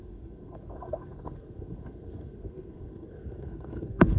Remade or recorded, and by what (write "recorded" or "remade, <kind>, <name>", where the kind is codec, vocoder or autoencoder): remade, codec, SNAC